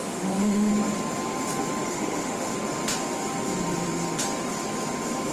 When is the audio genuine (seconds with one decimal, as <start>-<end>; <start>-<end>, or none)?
0.7-1.9; 2.5-5.3